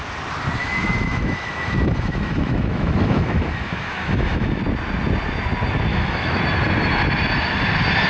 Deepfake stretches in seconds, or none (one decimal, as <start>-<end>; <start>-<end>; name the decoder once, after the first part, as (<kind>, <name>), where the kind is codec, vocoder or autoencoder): 0.6-4.6 (autoencoder, DAC-VAE); 5.9-6.4